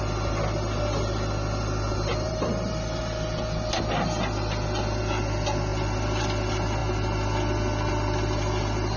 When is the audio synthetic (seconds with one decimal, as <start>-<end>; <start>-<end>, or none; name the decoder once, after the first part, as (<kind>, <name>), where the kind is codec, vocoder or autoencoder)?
2.1-3.0 (vocoder, BigVGAN v2)